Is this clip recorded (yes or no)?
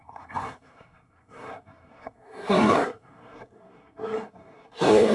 no